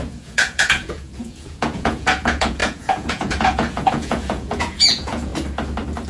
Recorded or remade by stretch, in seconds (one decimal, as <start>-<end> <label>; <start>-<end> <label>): 0.0-5.3 remade; 5.3-6.1 recorded